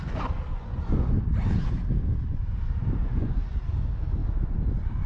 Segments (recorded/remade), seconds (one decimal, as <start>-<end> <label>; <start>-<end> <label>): 0.0-0.5 recorded; 0.5-1.2 remade; 1.2-3.0 recorded; 3.0-3.5 remade; 3.5-5.1 recorded